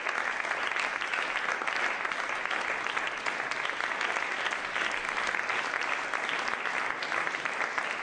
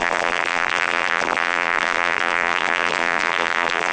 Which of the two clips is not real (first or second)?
second